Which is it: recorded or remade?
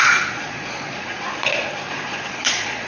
remade